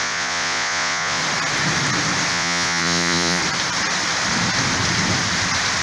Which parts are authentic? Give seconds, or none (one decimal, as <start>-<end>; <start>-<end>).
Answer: 1.2-2.3; 3.4-5.8